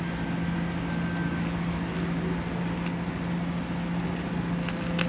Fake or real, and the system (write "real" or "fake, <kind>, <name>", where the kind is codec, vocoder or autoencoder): real